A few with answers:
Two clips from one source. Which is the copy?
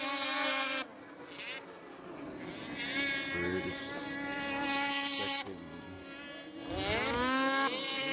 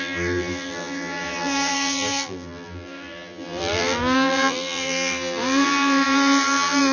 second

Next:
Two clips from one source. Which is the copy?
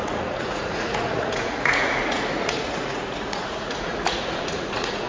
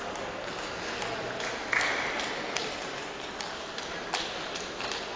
first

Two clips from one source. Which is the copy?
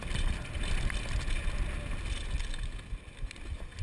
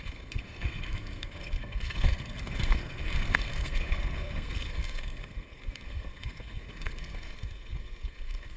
second